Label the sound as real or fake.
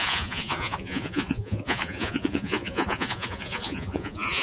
fake